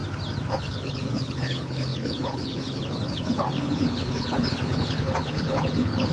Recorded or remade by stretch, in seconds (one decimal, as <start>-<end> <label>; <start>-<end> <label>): 0.0-0.5 recorded; 0.5-6.1 remade